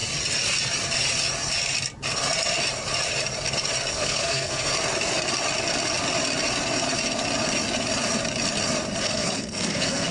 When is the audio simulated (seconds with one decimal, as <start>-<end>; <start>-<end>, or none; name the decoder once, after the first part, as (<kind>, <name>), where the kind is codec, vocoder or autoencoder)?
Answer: 3.9-4.7 (codec, SNAC); 9.0-10.1